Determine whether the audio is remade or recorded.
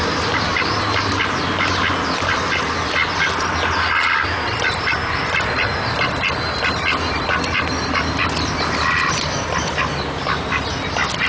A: recorded